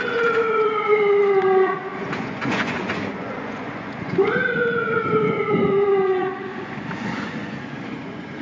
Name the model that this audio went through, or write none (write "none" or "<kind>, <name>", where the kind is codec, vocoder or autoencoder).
vocoder, Vocos